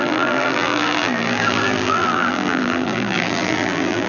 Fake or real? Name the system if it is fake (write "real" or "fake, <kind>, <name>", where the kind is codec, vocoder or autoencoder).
fake, vocoder, BigVGAN v2